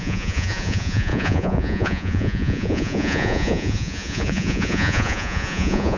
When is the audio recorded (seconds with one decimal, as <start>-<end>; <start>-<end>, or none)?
none